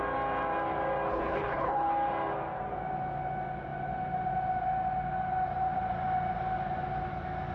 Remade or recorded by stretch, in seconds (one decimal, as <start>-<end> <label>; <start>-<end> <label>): 0.0-1.1 recorded; 1.1-1.9 remade; 1.9-7.5 recorded